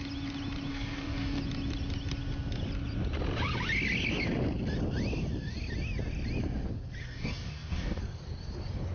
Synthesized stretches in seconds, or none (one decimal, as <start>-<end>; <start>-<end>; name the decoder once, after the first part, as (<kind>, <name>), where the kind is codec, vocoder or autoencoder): 0.7-1.4 (codec, DAC); 7.0-8.0